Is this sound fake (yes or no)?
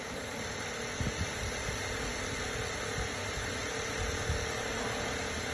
no